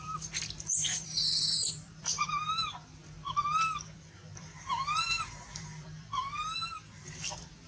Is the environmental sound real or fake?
fake